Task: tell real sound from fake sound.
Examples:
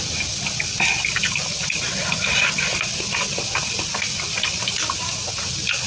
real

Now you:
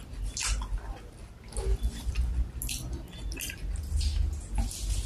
real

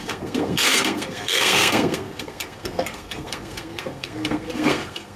fake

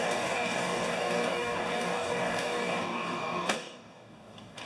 fake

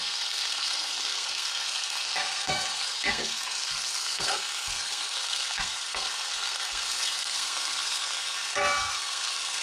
fake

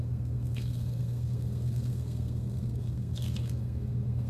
fake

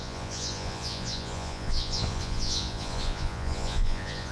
fake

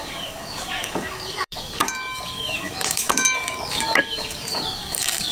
fake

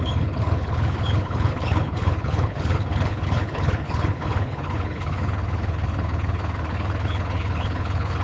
fake